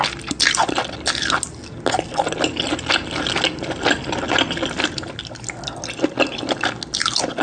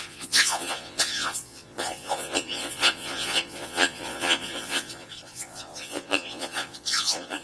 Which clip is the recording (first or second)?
first